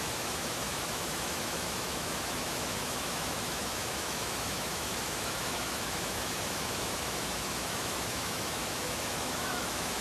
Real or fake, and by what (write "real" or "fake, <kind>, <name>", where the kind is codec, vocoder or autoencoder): fake, autoencoder, DAC-VAE